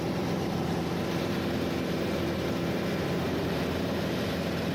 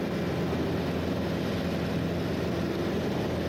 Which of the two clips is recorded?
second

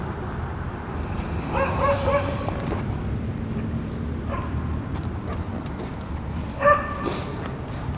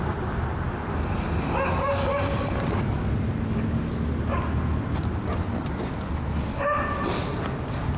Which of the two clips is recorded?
second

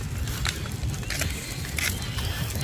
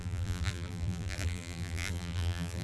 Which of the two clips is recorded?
first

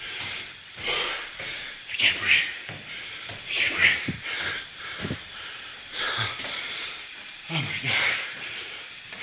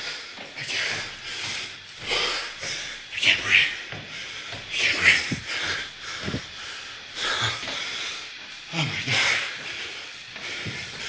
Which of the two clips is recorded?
second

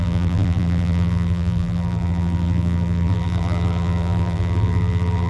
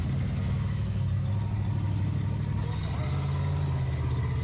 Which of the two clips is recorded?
second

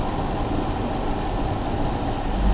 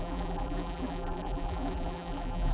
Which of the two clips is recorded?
first